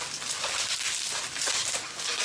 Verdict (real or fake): real